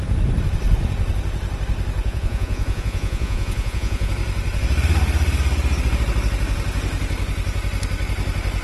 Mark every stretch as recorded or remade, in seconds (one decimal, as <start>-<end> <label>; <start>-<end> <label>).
0.0-2.0 recorded; 2.0-4.1 remade; 4.1-8.6 recorded